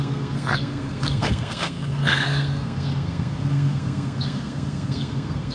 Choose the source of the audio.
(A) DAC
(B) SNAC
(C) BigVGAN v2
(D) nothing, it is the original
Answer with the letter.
B